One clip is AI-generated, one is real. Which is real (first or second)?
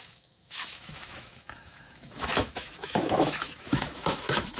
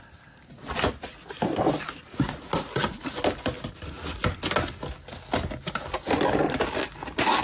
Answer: second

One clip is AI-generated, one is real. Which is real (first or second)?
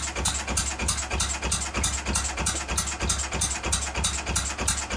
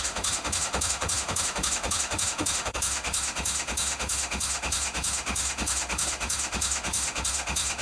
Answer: first